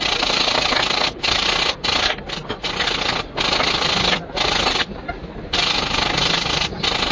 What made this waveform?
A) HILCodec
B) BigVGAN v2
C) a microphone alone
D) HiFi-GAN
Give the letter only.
C